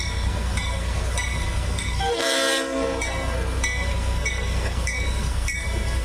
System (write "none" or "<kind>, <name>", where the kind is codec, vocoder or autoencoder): codec, SNAC